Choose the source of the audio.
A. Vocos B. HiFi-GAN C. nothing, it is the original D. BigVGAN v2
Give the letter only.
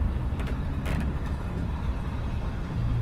C